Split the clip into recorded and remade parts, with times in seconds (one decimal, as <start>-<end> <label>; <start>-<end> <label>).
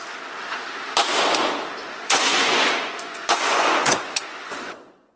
0.0-1.8 recorded; 1.8-5.2 remade